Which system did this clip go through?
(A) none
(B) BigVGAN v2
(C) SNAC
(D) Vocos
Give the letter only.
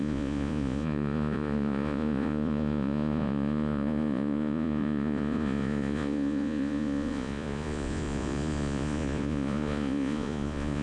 D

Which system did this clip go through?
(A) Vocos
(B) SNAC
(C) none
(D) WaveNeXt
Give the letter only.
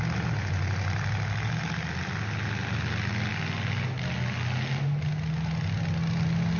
C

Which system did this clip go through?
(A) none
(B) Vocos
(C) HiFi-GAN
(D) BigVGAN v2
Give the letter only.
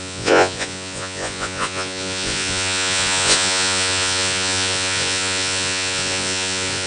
B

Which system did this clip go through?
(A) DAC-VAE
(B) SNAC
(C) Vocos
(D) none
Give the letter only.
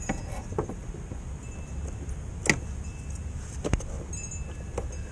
D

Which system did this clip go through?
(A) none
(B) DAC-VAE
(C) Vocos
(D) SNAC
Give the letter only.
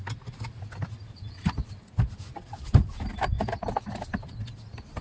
A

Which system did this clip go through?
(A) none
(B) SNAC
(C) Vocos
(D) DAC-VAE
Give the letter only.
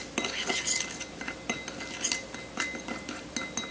A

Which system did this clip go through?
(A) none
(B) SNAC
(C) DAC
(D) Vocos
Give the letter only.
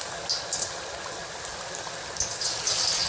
A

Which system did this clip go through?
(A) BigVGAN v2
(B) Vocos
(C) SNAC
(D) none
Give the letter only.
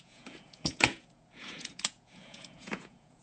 B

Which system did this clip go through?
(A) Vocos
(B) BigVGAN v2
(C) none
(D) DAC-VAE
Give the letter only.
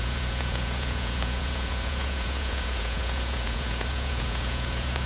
A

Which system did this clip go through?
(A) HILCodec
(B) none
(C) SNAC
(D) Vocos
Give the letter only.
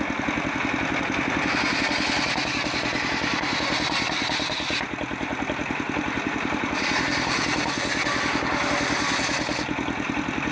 B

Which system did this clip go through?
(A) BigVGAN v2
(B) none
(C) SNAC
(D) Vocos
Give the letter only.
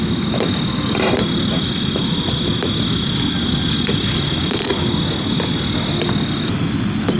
B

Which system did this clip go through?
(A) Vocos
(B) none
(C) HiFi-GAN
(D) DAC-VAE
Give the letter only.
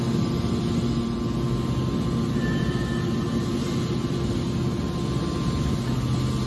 B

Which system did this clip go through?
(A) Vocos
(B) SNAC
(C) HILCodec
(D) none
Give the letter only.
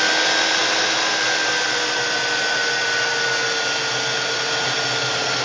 D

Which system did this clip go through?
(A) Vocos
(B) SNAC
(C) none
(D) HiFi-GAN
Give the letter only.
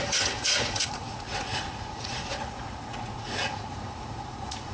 A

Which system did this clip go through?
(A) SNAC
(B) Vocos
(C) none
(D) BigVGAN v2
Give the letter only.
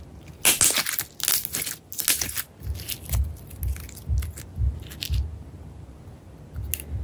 C